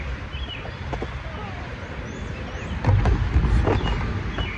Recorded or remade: recorded